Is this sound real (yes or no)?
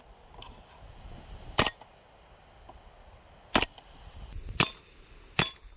yes